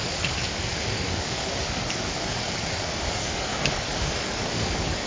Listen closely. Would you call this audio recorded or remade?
remade